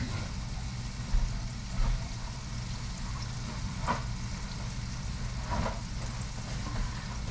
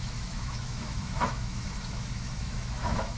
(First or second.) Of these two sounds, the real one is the first